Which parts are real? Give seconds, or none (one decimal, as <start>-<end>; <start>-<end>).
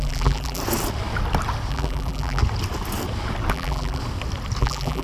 0.6-1.7; 2.4-3.5; 4.0-4.6